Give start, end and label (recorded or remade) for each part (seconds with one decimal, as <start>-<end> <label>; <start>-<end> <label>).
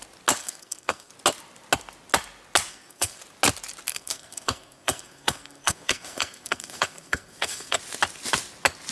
0.0-0.4 recorded; 0.4-1.1 remade; 1.1-2.7 recorded; 2.7-3.2 remade; 3.2-3.9 recorded; 3.9-7.8 remade; 7.8-8.9 recorded